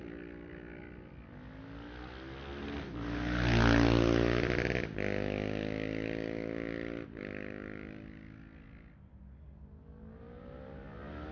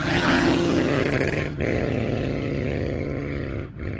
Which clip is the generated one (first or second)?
second